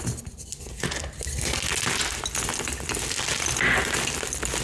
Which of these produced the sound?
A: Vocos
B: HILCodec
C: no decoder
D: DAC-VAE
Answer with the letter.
C